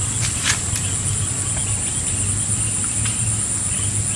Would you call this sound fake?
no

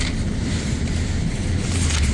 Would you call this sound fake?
no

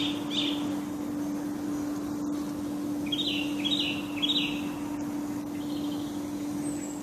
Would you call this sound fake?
no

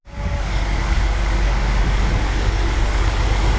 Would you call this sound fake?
yes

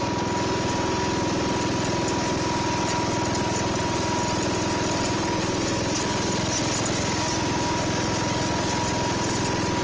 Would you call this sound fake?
no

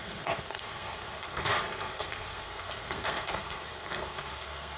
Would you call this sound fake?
yes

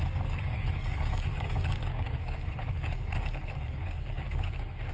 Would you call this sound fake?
yes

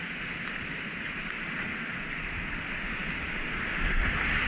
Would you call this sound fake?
no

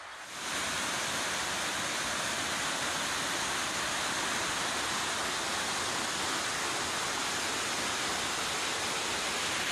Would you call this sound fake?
no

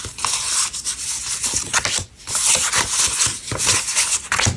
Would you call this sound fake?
no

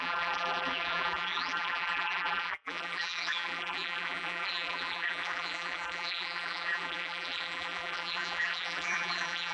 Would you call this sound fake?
yes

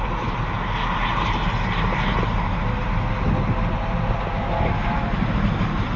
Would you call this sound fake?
no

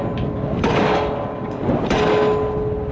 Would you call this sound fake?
no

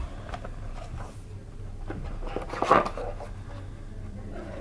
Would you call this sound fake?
no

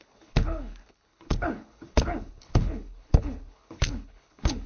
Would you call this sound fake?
yes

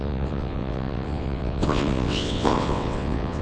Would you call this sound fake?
yes